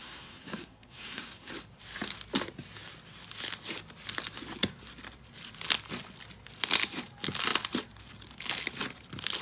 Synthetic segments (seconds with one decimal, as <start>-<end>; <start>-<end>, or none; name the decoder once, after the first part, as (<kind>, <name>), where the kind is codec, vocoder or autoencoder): 0.0-1.5 (codec, SNAC)